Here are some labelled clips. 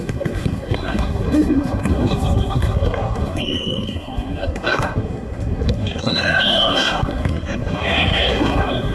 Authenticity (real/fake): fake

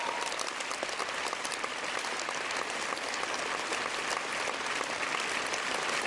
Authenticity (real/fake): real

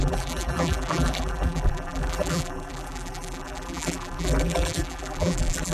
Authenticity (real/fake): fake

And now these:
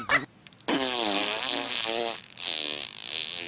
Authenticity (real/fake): real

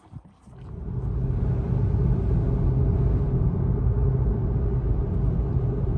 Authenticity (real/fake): real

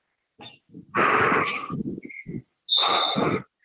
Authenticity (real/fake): real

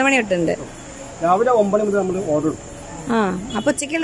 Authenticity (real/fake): real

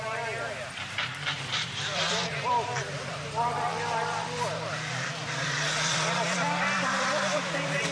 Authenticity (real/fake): fake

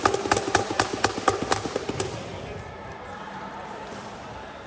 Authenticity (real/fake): real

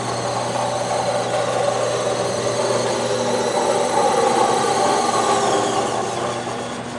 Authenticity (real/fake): real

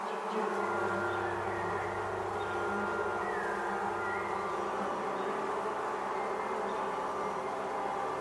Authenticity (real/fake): real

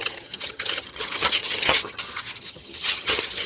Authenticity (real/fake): fake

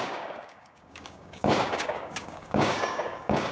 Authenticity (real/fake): fake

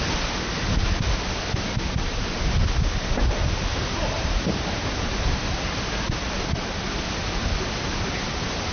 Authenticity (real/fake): real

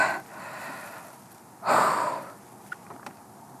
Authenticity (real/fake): real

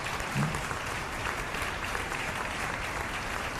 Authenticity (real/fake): fake